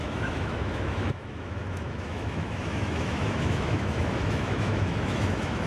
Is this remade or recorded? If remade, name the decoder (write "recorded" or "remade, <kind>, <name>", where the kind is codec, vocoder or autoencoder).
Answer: remade, autoencoder, DAC-VAE